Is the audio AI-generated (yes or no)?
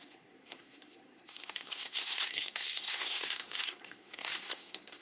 yes